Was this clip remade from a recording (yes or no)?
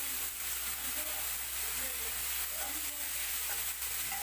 no